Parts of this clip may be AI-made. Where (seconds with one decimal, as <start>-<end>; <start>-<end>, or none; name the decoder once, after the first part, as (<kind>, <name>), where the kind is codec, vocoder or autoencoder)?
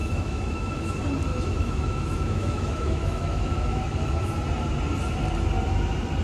0.0-0.9 (autoencoder, DAC-VAE); 1.3-4.3